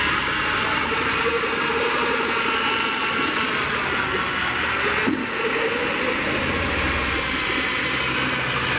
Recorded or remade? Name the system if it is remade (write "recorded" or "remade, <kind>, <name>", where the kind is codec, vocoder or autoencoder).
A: recorded